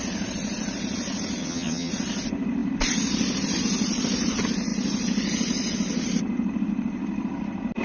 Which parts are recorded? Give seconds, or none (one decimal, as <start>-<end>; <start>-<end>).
0.0-1.4; 1.9-7.8